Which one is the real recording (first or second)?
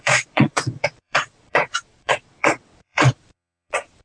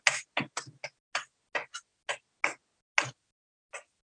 second